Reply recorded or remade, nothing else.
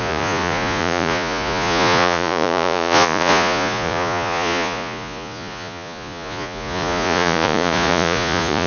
remade